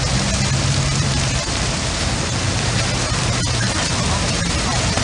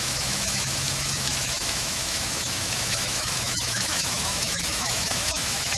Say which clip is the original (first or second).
first